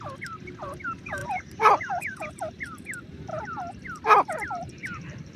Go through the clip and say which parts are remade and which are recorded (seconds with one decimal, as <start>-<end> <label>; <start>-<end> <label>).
0.0-1.2 recorded; 1.2-1.9 remade; 1.9-3.3 recorded; 3.3-3.8 remade; 3.8-5.4 recorded